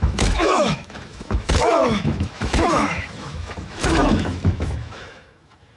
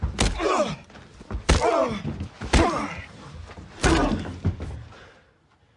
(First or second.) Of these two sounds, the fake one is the first